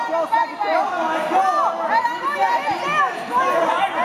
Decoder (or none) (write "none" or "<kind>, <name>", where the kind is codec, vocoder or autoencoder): none